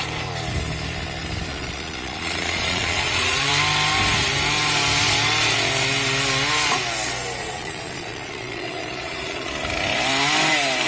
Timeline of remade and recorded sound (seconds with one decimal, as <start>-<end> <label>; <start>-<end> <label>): 0.0-1.5 recorded; 1.5-3.5 remade; 3.5-7.4 recorded; 7.4-9.5 remade; 9.5-10.9 recorded